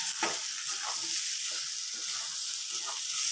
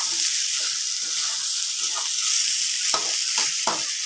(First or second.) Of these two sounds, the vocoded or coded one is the second